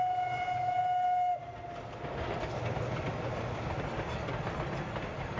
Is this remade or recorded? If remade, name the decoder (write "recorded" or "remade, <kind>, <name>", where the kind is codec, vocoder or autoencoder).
recorded